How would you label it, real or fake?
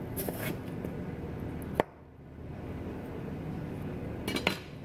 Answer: real